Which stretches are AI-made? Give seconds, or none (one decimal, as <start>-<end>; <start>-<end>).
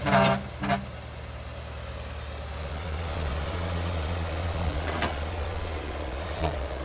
2.6-6.8